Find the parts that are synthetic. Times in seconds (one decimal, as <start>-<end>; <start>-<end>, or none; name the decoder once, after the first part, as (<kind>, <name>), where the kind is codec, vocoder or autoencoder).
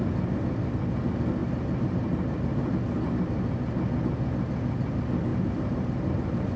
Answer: 1.4-2.7 (vocoder, BigVGAN v2); 5.3-6.6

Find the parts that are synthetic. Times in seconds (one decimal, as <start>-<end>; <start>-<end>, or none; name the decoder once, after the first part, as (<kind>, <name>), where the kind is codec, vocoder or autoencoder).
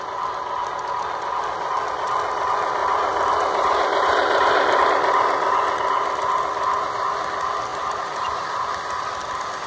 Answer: 2.8-4.8 (vocoder, BigVGAN v2); 7.7-8.6